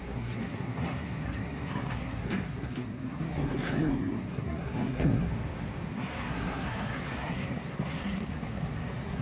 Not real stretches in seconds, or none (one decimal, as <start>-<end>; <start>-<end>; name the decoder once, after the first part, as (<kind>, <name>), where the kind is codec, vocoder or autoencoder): 0.0-5.3 (codec, SNAC); 5.9-9.2